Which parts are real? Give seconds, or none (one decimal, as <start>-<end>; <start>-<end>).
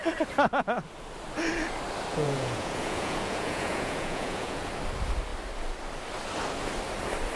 0.0-2.1; 4.7-7.4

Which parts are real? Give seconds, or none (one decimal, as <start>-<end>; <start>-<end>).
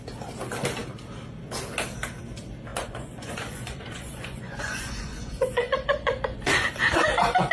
0.0-2.7; 6.5-7.5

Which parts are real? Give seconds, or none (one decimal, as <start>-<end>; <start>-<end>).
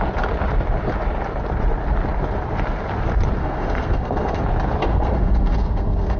0.0-3.4; 4.4-4.9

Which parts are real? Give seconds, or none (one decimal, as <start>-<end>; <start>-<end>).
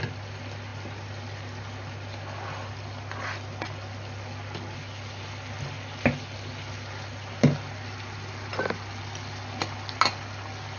0.0-10.8